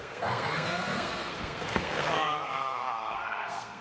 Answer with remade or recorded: remade